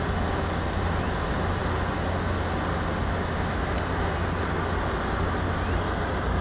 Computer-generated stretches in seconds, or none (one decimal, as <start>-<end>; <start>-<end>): none